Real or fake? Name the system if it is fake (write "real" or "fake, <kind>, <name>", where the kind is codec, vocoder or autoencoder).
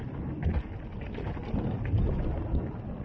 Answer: real